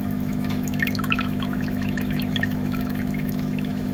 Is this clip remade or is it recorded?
remade